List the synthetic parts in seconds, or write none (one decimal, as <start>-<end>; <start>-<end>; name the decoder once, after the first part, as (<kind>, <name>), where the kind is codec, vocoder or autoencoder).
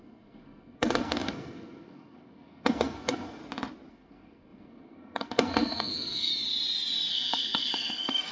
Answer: 0.0-3.4 (codec, SNAC); 3.9-6.3; 7.1-8.3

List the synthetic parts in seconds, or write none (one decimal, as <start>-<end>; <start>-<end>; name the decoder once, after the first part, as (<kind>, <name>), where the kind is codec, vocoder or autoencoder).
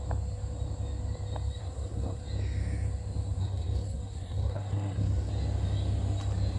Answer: 1.6-2.2 (codec, SNAC); 3.4-5.3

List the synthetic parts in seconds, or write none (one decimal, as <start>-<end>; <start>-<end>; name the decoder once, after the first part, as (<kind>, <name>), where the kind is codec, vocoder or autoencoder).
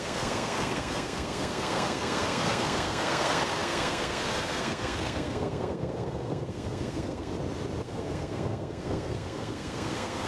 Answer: 0.0-7.3 (codec, SNAC); 7.8-10.3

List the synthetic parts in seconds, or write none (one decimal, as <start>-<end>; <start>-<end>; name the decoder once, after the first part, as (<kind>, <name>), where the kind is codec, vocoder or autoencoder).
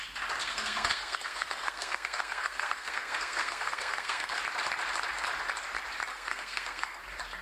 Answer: 0.4-4.4 (codec, SNAC); 6.1-7.0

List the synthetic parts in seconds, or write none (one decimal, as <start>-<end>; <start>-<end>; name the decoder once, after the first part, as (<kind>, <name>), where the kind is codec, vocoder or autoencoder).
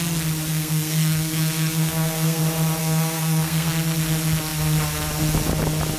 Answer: 0.5-2.4 (codec, SNAC); 2.8-3.7